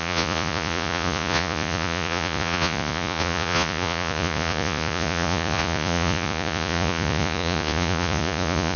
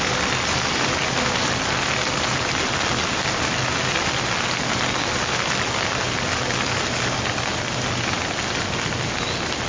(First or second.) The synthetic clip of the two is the first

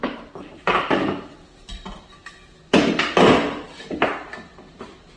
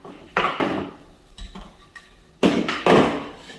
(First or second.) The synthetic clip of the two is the second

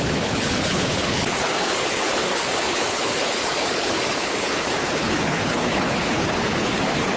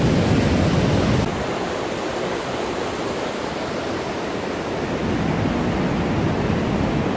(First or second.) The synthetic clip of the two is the first